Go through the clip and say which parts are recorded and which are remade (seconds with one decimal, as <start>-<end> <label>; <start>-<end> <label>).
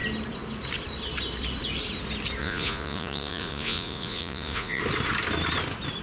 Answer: 0.0-2.4 recorded; 2.4-4.8 remade; 4.8-6.0 recorded